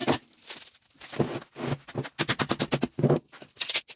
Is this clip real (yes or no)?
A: yes